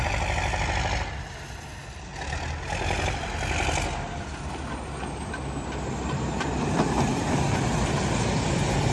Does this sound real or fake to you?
real